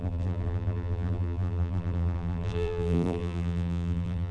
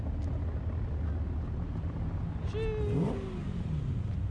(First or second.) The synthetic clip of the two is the first